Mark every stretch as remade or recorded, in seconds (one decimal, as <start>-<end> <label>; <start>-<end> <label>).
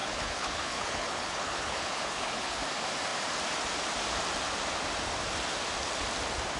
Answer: 0.0-2.6 remade; 2.6-6.6 recorded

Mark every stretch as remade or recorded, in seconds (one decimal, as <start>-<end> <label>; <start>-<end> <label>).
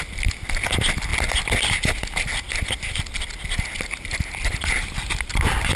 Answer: 0.0-5.8 recorded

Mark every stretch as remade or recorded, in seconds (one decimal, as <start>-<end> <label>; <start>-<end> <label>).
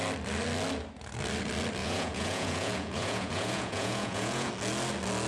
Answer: 0.0-1.8 recorded; 1.8-4.5 remade; 4.5-5.3 recorded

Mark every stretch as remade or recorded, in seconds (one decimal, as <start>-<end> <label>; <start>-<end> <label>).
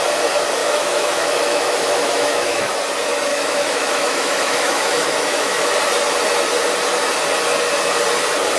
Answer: 0.0-0.6 recorded; 0.6-2.7 remade; 2.7-3.3 recorded; 3.3-5.7 remade; 5.7-8.6 recorded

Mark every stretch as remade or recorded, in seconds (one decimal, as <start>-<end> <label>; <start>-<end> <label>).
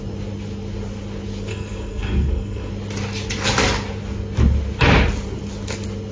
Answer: 0.0-1.5 recorded; 1.5-2.7 remade; 2.7-6.1 recorded